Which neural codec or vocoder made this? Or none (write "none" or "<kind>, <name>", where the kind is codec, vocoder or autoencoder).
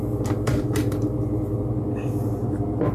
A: vocoder, BigVGAN v2